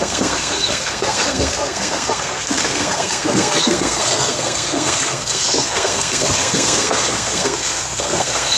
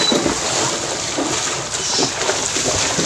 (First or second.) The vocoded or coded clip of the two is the first